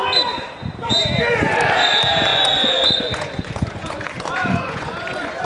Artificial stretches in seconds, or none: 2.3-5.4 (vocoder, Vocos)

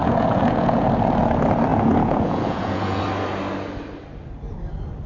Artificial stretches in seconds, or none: 0.0-0.9 (vocoder, Vocos); 1.7-3.0

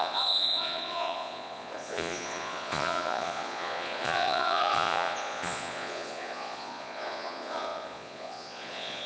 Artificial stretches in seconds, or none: 0.0-9.1 (vocoder, Vocos)

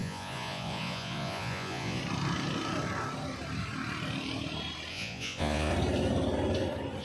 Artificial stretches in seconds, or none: 0.0-2.0 (vocoder, Vocos); 4.9-5.7